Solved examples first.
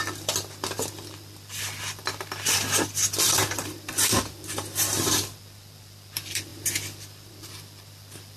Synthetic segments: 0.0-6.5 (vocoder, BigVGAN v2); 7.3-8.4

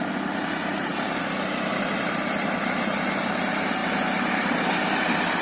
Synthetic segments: none

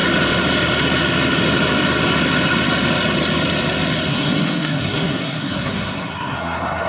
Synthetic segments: 4.1-6.9 (codec, SNAC)

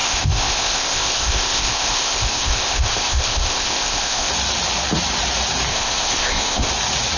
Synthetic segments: 0.0-4.3 (codec, ZipCodec); 5.7-6.7

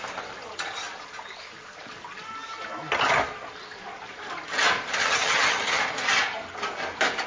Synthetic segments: 5.0-5.8 (vocoder, HiFi-GAN)